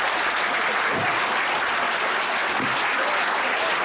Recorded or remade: recorded